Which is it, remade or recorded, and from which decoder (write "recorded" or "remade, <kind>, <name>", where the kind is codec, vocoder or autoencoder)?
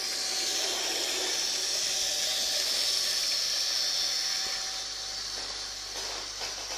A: recorded